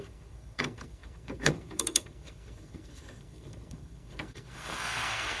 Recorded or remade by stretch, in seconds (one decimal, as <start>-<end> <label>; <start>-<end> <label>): 0.0-5.4 remade

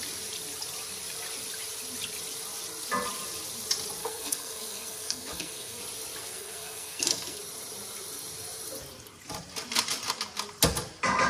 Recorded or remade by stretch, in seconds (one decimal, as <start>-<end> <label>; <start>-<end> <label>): 0.0-4.0 recorded; 4.0-5.8 remade; 5.8-6.2 recorded; 6.2-7.4 remade; 7.4-11.3 recorded

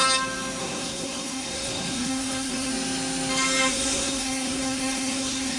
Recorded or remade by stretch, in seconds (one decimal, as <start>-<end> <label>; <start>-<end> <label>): 0.0-0.6 recorded; 0.6-2.7 remade; 2.7-3.7 recorded; 3.7-5.6 remade

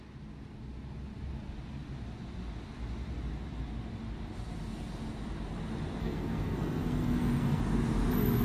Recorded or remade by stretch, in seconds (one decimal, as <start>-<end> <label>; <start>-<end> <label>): 0.0-6.0 recorded; 6.0-7.6 remade; 7.6-8.4 recorded

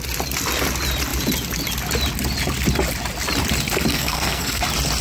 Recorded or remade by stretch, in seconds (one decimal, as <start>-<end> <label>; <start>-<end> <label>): 0.0-3.9 recorded; 3.9-4.6 remade; 4.6-5.0 recorded

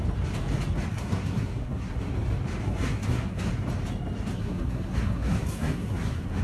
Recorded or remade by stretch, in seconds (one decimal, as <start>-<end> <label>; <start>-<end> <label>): 0.0-0.9 recorded; 0.9-2.1 remade; 2.1-2.6 recorded; 2.6-3.5 remade; 3.5-4.3 recorded; 4.3-6.4 remade

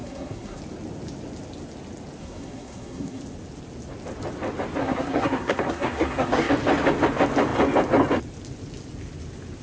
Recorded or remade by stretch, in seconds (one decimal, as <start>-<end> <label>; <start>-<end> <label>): 0.0-0.6 remade; 0.6-2.2 recorded; 2.2-3.2 remade; 3.2-4.8 recorded; 4.8-6.5 remade; 6.5-9.6 recorded

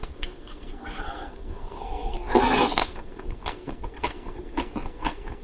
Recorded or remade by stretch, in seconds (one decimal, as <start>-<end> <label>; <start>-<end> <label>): 0.0-5.4 remade